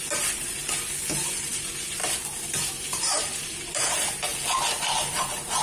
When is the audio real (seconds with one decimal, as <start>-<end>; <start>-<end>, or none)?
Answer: 0.6-1.3; 2.0-2.7; 4.3-4.9